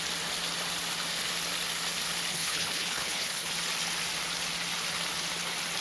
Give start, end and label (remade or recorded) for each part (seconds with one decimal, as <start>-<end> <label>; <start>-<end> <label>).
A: 0.0-2.3 recorded; 2.3-3.5 remade; 3.5-5.8 recorded